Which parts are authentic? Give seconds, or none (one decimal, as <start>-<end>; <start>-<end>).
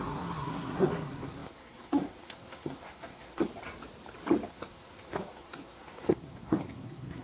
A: 3.5-4.5